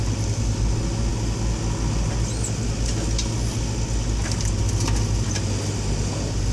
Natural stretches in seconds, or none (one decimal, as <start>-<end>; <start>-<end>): 0.0-6.5